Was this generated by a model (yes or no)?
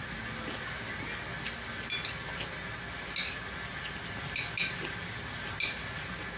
no